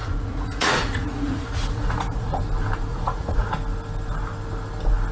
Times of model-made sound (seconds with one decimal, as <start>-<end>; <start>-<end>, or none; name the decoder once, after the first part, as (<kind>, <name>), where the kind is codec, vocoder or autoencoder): 0.0-2.4 (vocoder, Vocos); 2.9-3.5